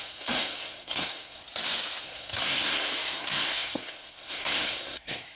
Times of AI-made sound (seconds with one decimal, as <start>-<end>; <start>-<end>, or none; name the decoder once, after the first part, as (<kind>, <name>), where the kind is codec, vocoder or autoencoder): 0.0-1.4 (codec, SNAC); 2.0-5.4